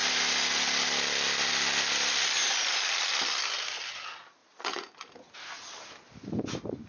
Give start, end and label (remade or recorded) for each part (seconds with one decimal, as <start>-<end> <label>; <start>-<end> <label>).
0.0-4.4 recorded; 4.4-4.9 remade; 4.9-6.9 recorded